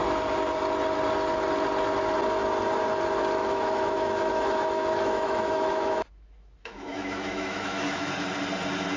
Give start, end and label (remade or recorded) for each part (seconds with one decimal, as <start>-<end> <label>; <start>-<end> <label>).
0.0-3.4 recorded; 3.4-8.1 remade; 8.1-9.0 recorded